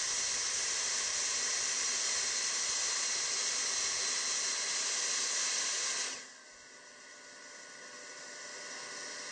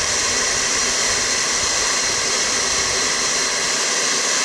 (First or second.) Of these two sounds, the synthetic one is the second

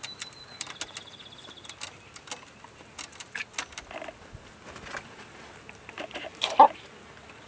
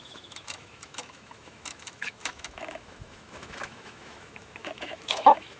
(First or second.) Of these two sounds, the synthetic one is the second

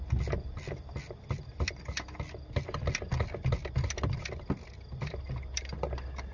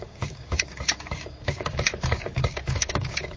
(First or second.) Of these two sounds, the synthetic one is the second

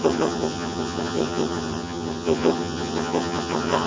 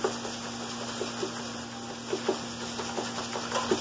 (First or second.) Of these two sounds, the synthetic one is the first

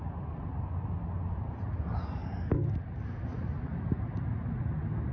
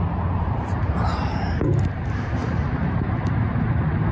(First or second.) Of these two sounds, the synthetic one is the second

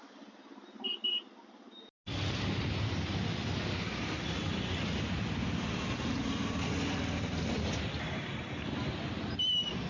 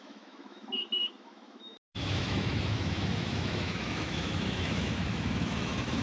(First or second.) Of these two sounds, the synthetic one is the second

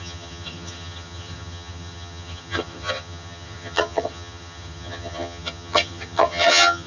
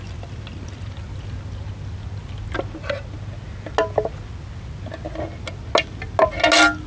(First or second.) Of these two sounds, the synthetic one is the first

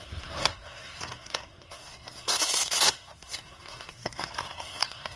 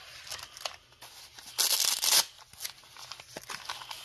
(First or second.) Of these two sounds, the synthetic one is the first